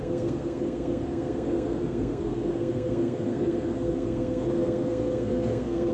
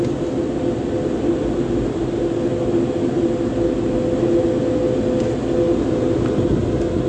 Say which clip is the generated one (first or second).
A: first